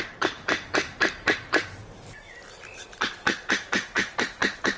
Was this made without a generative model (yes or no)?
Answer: no